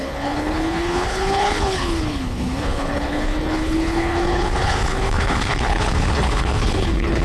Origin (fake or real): fake